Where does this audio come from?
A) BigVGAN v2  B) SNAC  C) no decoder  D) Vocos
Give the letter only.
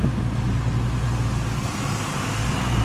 C